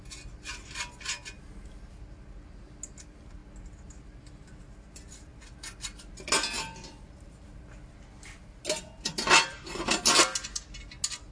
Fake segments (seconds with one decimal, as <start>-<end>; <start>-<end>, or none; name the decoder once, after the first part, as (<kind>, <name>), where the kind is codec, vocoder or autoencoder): none